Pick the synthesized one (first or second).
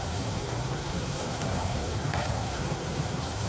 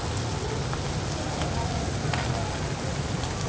first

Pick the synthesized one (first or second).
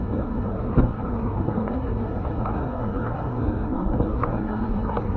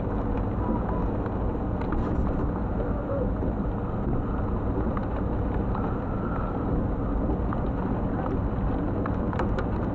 first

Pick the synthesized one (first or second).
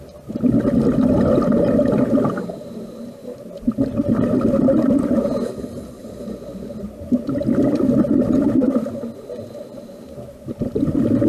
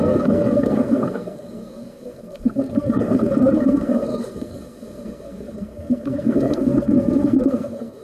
second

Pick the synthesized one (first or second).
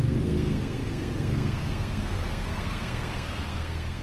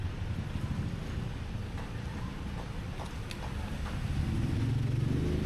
first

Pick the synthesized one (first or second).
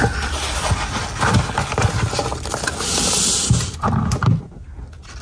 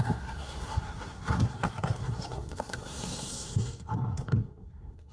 second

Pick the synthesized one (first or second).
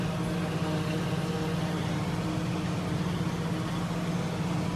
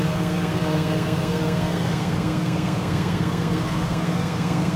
second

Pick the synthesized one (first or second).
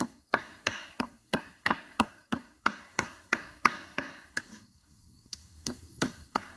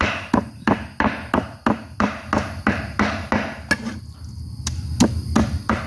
first